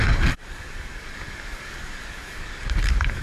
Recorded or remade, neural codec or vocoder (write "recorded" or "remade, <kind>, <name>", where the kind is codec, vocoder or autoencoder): remade, codec, DAC